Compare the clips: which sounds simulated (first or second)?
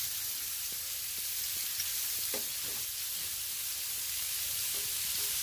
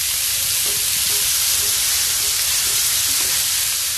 second